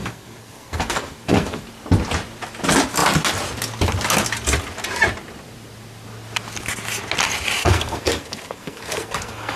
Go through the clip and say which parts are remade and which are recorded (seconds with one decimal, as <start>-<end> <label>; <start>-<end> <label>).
0.0-1.6 remade; 1.6-7.6 recorded; 7.6-9.6 remade